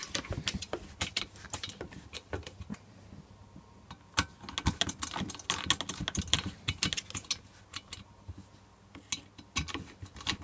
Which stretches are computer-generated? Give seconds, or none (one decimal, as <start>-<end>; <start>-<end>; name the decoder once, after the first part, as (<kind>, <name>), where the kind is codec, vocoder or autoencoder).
none